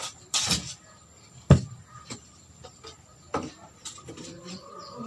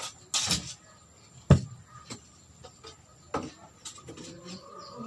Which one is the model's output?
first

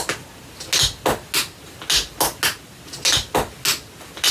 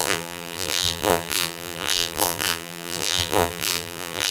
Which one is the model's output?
second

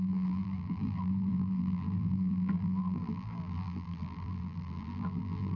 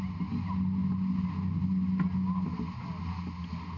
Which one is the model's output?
first